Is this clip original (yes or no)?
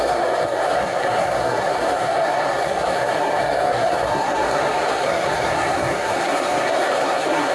no